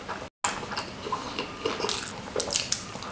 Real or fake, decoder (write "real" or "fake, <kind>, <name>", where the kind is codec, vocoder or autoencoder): real